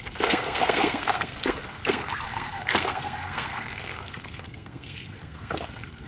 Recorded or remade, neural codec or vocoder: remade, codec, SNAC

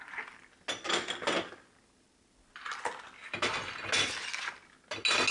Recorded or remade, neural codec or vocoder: recorded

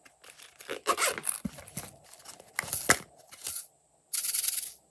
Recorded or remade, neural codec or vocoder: recorded